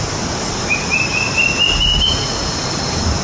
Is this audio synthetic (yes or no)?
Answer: no